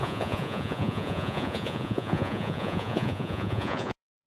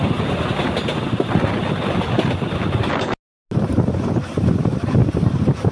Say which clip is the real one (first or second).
second